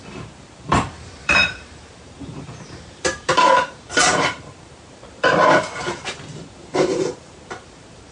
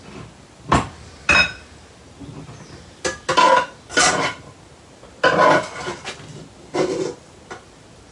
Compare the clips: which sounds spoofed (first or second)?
first